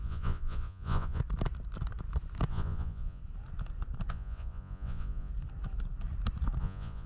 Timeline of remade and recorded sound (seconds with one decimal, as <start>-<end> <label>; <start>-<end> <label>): 0.0-1.2 remade; 1.2-2.5 recorded; 2.5-3.2 remade; 3.2-4.1 recorded; 4.1-5.3 remade; 5.3-6.6 recorded; 6.6-7.1 remade